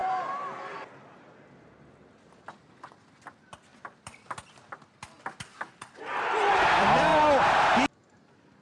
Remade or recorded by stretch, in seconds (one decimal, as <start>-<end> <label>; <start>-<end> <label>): 0.0-3.3 recorded; 3.3-3.7 remade; 3.7-6.2 recorded; 6.2-7.1 remade; 7.1-8.6 recorded